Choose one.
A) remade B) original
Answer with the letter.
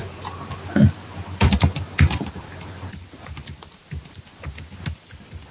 B